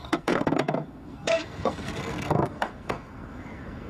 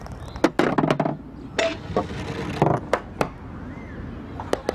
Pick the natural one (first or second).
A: second